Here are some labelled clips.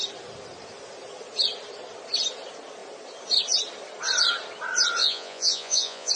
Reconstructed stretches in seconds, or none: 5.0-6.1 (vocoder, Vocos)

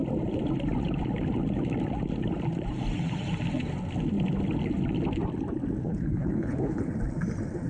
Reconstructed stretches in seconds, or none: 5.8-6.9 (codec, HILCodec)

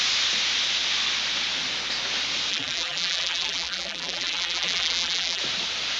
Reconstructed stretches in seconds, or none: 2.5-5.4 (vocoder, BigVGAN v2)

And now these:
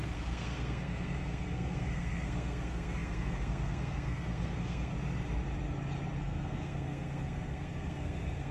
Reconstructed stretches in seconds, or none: 0.0-4.9 (codec, SNAC); 6.2-8.5